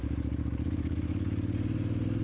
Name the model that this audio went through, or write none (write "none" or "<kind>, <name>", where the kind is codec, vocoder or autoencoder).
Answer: none